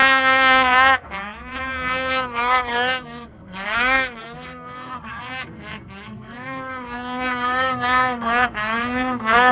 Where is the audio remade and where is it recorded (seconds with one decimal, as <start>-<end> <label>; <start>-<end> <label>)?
0.0-9.5 remade